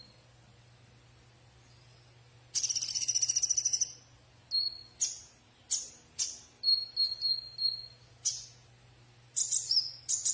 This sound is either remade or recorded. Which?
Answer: recorded